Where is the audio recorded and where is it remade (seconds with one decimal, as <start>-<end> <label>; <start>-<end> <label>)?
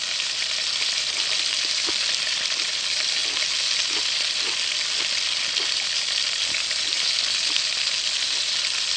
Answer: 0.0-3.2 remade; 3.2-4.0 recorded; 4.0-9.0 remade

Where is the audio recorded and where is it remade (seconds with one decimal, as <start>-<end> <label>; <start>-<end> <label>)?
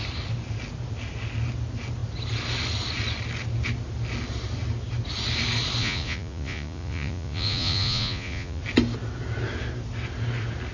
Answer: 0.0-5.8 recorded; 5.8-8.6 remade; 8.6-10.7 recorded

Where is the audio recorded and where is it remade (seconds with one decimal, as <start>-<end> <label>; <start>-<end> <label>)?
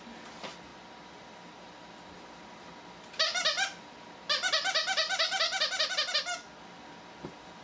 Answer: 0.0-7.6 recorded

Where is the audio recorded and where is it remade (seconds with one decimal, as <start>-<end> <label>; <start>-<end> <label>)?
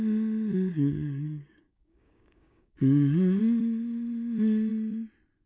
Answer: 0.0-0.7 recorded; 0.7-3.4 remade; 3.4-5.5 recorded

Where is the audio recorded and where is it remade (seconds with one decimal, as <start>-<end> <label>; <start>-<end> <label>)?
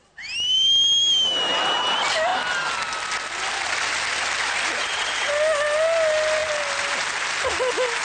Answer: 0.0-4.8 recorded; 4.8-5.3 remade; 5.3-8.0 recorded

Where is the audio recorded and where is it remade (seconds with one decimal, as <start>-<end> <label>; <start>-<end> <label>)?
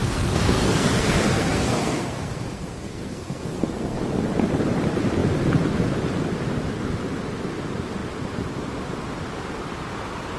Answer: 0.0-4.0 remade; 4.0-10.4 recorded